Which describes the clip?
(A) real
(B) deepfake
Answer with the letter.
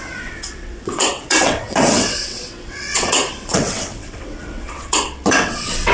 B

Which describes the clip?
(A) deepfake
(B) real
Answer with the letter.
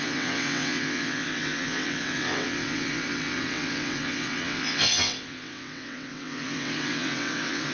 A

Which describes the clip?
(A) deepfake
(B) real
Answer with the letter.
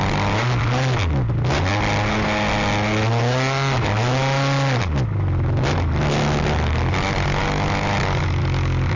B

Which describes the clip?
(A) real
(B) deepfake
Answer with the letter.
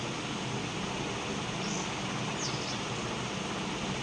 A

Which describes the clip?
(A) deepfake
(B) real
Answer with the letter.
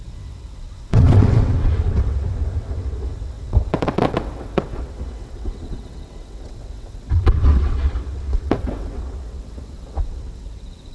A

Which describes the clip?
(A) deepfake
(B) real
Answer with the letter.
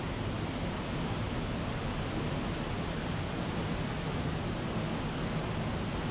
B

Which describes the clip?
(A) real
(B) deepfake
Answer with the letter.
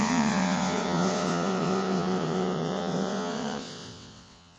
B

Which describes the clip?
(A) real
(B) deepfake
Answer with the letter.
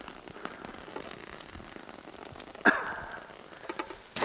A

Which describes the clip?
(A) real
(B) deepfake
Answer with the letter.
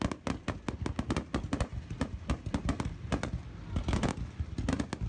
A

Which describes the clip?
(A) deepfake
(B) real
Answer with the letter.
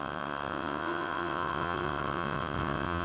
A